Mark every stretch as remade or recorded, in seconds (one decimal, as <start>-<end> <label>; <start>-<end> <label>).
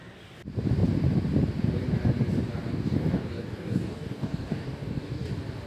0.0-2.7 recorded; 2.7-5.3 remade; 5.3-5.7 recorded